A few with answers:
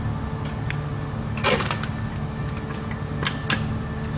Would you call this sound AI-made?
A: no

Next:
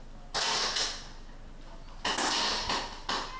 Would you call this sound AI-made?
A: no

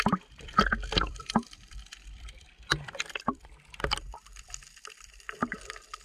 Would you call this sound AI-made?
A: yes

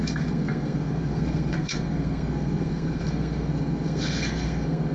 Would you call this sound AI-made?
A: yes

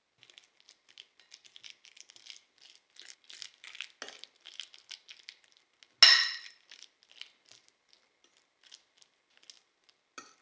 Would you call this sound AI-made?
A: no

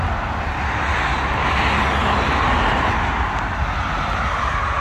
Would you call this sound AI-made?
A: no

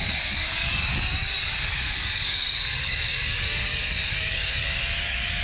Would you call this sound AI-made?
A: yes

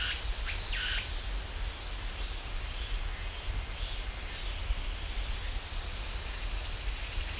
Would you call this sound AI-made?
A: no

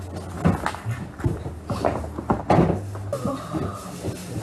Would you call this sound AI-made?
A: no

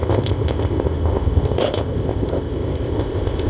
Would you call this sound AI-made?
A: yes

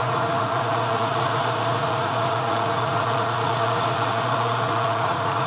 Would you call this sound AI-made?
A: yes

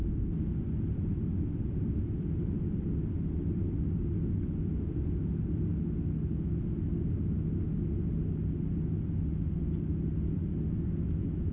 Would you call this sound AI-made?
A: no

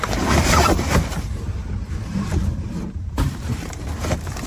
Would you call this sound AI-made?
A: yes